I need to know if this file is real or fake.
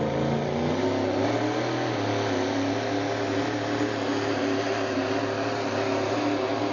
real